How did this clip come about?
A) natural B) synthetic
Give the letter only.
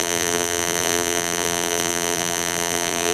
B